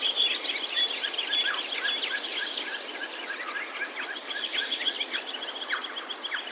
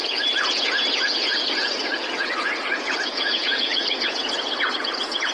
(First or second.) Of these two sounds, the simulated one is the second